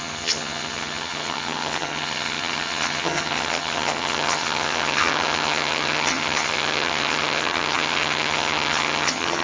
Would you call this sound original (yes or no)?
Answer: no